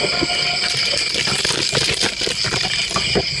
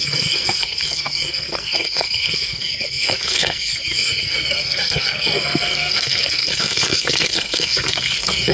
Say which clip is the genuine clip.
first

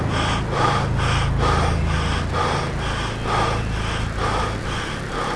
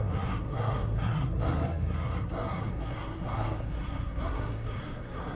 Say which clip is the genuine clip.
first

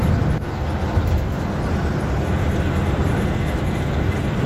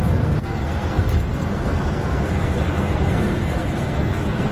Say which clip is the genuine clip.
first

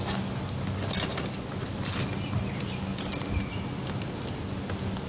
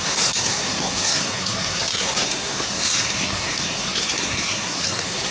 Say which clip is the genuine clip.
first